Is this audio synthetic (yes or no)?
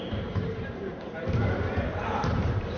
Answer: yes